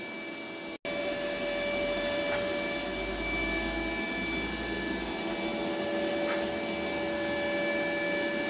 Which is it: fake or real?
real